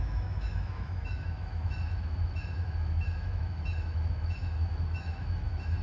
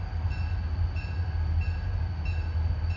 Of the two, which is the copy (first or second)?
first